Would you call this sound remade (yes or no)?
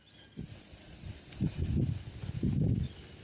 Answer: no